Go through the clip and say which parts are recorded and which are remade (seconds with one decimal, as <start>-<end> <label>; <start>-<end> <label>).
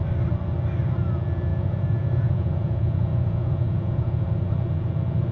0.0-1.5 recorded; 1.5-4.5 remade; 4.5-5.3 recorded